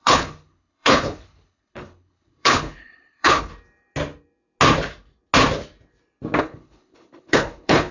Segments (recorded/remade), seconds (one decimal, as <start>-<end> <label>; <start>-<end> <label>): 0.0-3.5 remade; 3.5-6.4 recorded; 6.4-7.9 remade